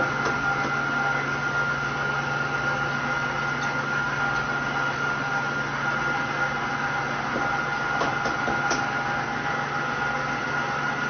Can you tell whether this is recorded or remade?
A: recorded